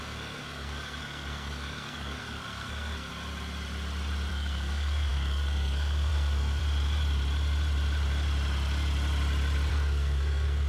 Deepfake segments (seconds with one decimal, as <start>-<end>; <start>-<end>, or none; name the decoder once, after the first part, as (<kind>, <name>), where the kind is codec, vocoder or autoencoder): 0.0-3.1 (codec, SNAC); 4.3-6.6; 9.7-10.7